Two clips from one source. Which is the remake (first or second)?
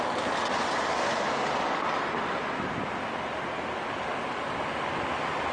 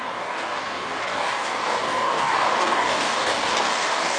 second